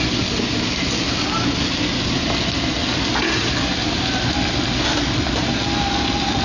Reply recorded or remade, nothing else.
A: recorded